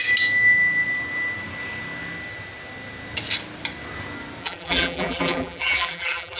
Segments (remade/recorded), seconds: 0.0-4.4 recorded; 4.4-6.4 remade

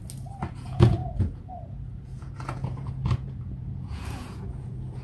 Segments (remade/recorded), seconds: 0.0-0.5 recorded; 0.5-5.0 remade

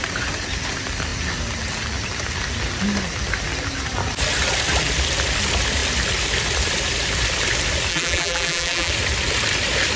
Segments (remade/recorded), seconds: 0.0-7.9 recorded; 7.9-8.9 remade; 8.9-10.0 recorded

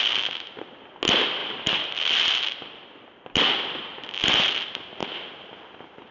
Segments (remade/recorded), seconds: 0.0-1.4 recorded; 1.4-4.1 remade; 4.1-5.0 recorded; 5.0-6.1 remade